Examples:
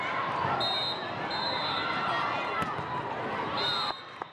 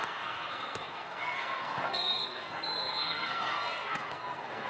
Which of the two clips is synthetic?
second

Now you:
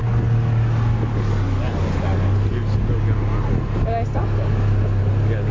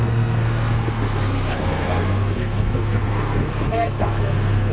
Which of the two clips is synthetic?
second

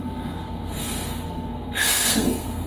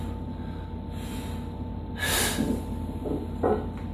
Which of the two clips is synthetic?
first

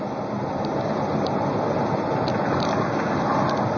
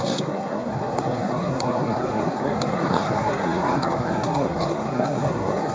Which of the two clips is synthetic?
second